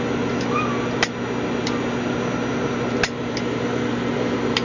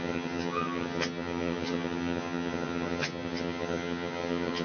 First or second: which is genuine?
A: first